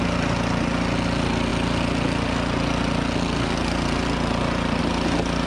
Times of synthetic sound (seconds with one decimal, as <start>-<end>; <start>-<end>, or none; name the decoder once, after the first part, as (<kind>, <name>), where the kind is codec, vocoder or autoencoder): none